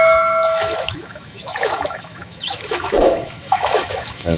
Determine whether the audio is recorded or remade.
remade